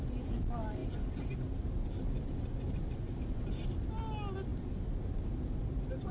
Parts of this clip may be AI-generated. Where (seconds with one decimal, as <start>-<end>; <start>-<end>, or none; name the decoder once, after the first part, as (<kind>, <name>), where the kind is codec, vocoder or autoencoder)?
none